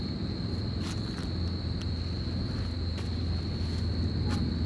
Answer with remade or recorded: recorded